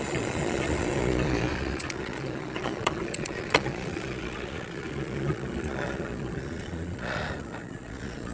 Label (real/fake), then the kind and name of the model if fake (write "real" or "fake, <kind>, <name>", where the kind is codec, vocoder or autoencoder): fake, vocoder, Vocos